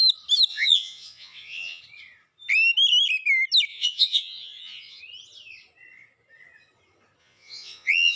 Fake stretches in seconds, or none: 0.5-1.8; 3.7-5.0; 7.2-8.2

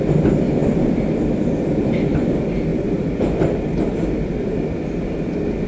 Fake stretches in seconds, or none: 0.6-2.0; 2.7-3.6